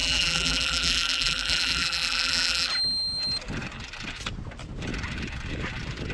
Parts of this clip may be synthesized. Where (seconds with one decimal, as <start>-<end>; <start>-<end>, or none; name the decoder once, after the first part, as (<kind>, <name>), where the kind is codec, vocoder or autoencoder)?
0.0-2.7 (vocoder, BigVGAN v2)